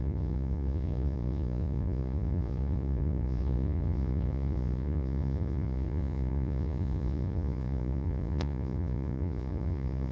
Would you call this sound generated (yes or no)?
yes